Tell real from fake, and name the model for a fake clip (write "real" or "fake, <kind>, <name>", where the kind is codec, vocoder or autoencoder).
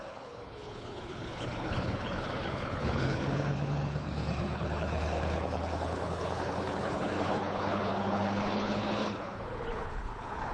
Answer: fake, codec, HILCodec